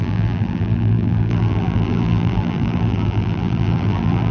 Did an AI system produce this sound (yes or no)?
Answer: yes